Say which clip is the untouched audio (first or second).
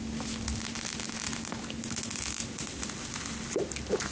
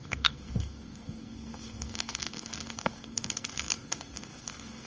first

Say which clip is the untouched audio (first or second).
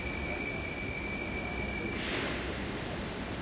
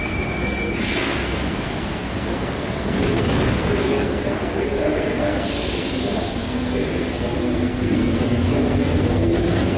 first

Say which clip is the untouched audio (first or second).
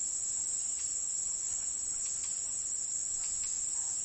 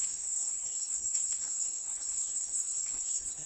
first